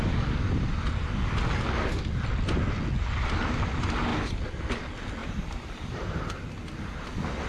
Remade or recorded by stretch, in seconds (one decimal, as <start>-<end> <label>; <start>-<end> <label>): 0.0-5.2 recorded; 5.2-6.3 remade; 6.3-7.5 recorded